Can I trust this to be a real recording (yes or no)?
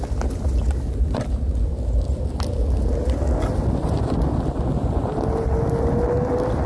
yes